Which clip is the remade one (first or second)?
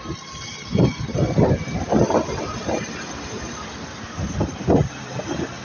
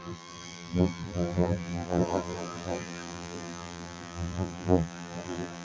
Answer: second